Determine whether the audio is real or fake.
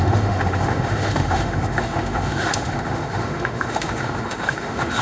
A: fake